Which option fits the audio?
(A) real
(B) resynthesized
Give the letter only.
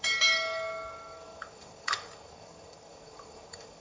B